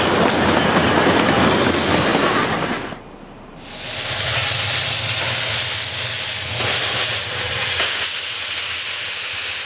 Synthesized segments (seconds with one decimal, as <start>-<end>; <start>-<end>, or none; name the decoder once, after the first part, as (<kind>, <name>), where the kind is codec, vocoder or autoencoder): none